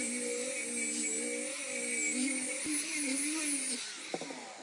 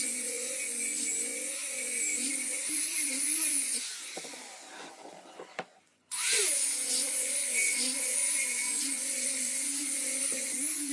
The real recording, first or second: first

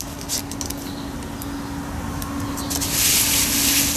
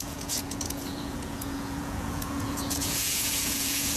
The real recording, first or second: first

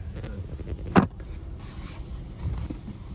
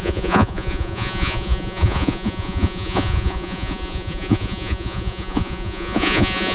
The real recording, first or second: first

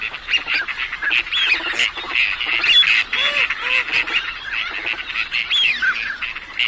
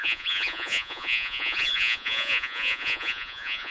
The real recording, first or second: first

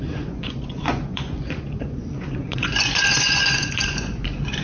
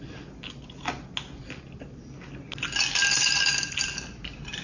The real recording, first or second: second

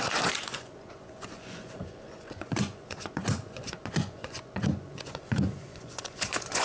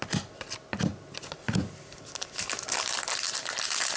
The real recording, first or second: second